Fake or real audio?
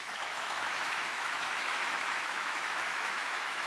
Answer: fake